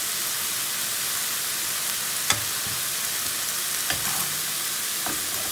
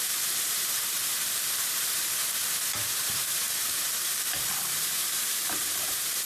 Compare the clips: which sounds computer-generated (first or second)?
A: second